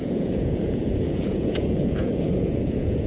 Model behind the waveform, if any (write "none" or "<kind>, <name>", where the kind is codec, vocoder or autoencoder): vocoder, Vocos